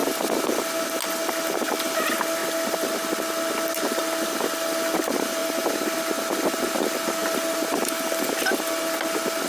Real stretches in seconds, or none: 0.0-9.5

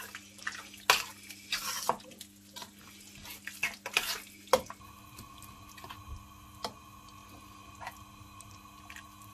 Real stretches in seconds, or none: 0.0-9.3

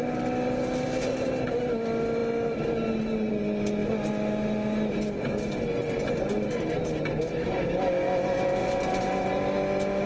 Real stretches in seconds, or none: 0.0-8.6; 9.3-10.1

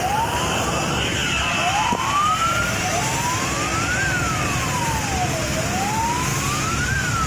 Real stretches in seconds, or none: 0.0-7.3

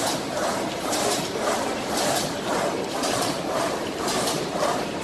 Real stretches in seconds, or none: 2.5-3.3

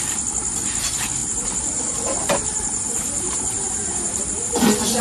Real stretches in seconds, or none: 0.0-1.2; 4.2-5.0

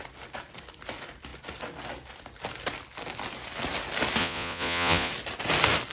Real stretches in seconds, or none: 0.0-4.2; 5.1-5.9